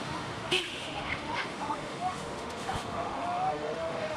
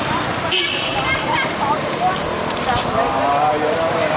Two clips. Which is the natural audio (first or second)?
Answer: second